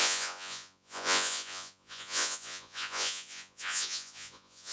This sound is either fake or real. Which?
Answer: fake